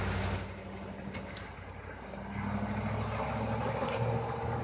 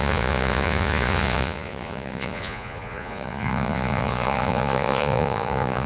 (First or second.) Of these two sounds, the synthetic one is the second